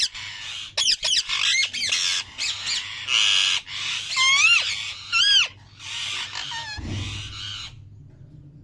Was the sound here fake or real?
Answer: real